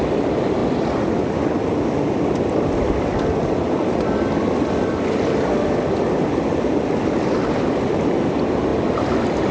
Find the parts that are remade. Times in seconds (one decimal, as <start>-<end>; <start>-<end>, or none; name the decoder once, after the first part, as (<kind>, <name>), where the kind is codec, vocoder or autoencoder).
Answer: none